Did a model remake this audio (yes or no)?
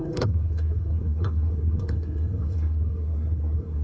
yes